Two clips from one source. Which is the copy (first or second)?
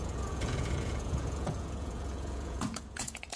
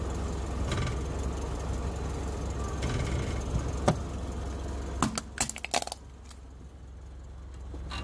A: first